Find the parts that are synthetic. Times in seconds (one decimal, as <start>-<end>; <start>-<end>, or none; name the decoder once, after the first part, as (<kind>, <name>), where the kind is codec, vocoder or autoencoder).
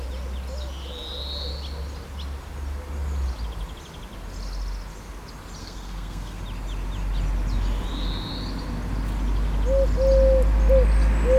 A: 5.6-6.4 (codec, SNAC)